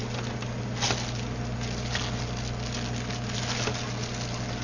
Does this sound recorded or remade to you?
recorded